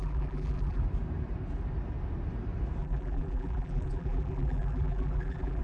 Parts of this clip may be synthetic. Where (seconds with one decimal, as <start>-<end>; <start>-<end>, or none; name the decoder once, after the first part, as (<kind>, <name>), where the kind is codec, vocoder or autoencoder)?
0.0-0.8 (vocoder, BigVGAN v2); 2.8-5.6

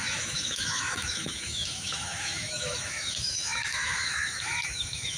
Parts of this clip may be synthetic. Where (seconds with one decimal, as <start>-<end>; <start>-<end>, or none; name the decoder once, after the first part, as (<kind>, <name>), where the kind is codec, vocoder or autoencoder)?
0.0-5.2 (autoencoder, DAC-VAE)